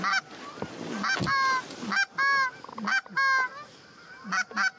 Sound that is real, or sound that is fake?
real